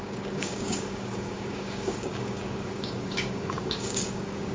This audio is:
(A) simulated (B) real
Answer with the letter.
A